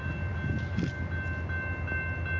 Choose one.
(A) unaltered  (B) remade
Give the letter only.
A